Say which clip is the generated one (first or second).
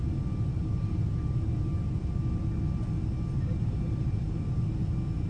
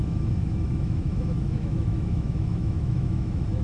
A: second